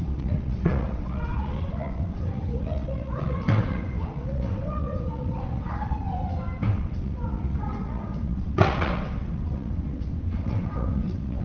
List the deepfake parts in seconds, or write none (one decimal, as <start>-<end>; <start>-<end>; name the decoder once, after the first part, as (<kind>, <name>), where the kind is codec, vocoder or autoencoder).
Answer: 0.0-6.0 (vocoder, WaveNeXt); 6.7-11.4